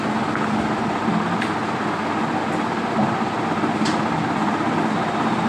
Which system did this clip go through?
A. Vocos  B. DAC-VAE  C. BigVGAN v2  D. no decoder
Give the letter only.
D